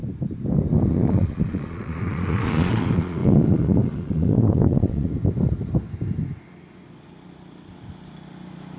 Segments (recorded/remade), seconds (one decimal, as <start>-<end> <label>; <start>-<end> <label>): 0.0-0.9 recorded; 0.9-5.1 remade; 5.1-8.8 recorded